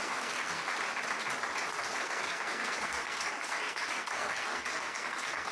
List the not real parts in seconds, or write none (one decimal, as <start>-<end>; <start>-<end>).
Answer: 0.0-0.7; 1.7-5.5